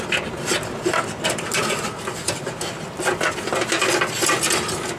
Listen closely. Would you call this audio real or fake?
real